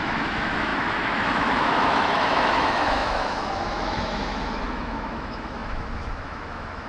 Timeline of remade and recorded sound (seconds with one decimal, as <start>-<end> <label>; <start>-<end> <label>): 0.0-6.9 remade